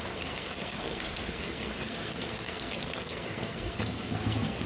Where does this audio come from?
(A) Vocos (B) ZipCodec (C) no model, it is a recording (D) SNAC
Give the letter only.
D